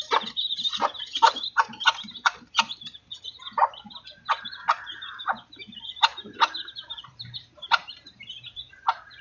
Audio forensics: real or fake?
fake